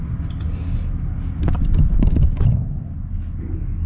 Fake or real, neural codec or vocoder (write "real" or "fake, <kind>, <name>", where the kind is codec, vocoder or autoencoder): real